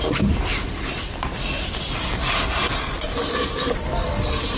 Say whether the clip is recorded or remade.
remade